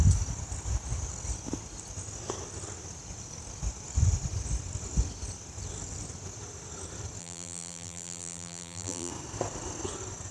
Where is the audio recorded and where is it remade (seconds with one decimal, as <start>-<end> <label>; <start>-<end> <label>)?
0.0-7.2 recorded; 7.2-9.1 remade; 9.1-10.3 recorded